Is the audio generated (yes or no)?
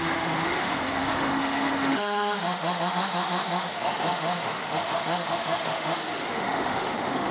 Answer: yes